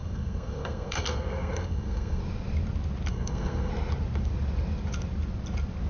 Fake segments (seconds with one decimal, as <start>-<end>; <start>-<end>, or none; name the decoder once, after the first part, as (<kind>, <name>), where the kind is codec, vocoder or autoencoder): 0.0-2.2 (codec, SNAC); 3.1-3.7